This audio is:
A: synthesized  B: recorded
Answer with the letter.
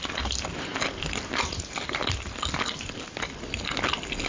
B